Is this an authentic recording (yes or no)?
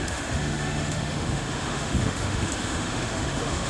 no